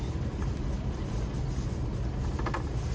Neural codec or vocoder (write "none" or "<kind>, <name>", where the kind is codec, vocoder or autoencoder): none